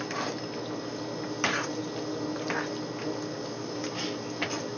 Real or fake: real